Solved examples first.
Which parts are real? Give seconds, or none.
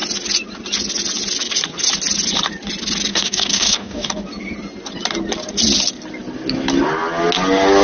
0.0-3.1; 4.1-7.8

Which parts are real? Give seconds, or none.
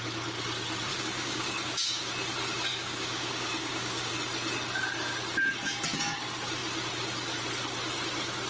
0.0-0.9; 2.1-2.7; 4.1-8.5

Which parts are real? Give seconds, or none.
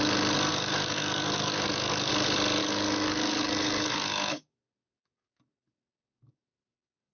0.0-0.5; 2.1-2.6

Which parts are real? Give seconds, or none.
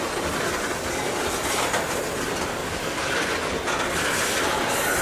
0.0-2.6; 3.3-5.0